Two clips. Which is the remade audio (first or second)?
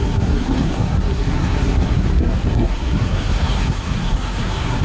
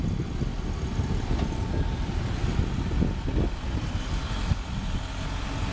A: first